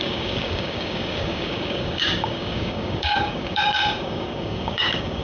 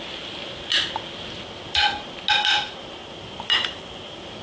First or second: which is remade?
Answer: first